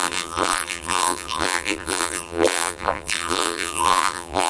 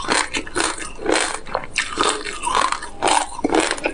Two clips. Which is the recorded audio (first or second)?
second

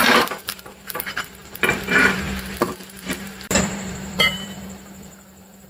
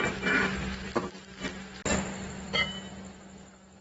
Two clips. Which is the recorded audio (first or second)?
second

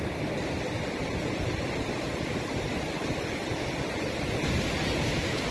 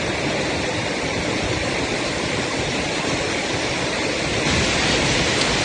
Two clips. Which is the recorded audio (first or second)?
first